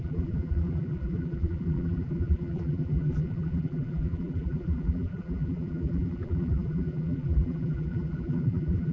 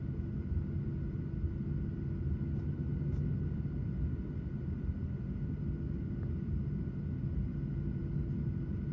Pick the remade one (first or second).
first